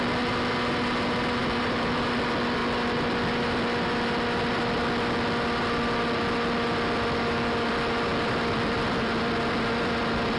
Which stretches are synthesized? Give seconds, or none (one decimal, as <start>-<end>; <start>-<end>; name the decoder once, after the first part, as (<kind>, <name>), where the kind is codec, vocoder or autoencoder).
1.4-2.0 (vocoder, BigVGAN v2); 8.1-10.4